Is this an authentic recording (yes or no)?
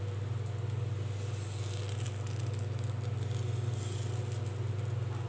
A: yes